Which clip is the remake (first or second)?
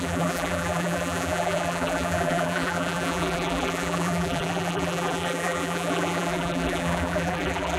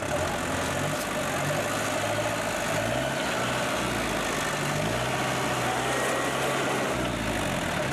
first